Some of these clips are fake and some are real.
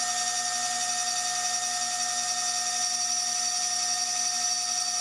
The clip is real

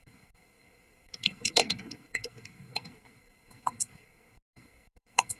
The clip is fake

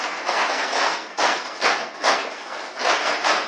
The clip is fake